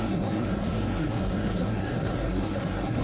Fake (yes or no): yes